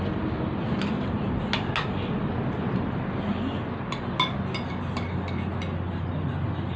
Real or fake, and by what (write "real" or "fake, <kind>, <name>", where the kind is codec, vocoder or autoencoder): real